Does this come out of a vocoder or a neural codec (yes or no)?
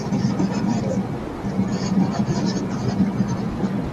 no